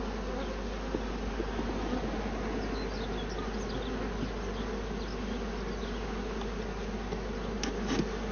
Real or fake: real